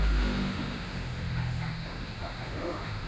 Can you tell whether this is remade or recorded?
remade